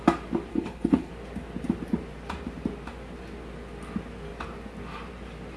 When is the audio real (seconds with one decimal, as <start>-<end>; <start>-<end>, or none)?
0.0-0.5; 1.1-5.6